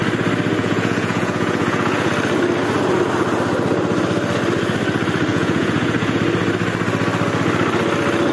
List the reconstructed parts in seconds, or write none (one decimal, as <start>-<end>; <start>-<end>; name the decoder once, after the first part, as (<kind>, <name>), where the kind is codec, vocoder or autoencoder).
0.6-2.1 (vocoder, Vocos); 5.3-6.2